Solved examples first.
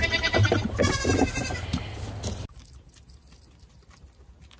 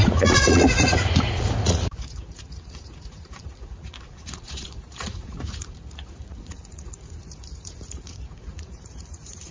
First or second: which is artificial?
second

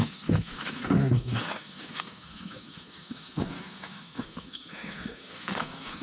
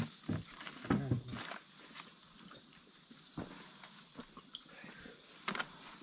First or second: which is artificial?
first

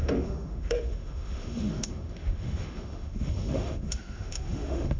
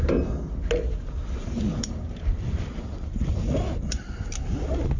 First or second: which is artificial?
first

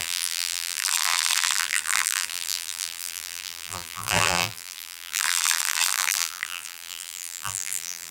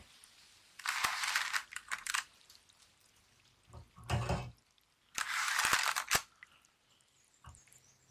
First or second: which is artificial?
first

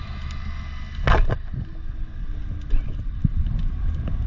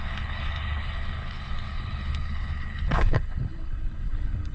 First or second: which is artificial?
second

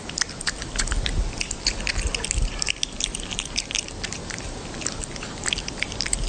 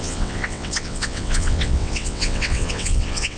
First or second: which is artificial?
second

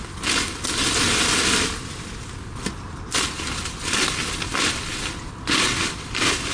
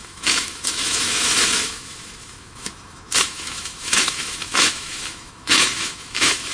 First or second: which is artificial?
second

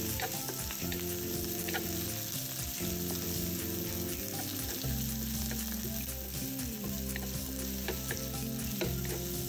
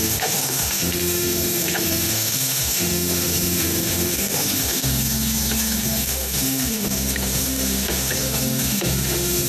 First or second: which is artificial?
second